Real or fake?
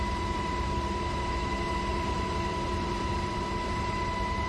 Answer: fake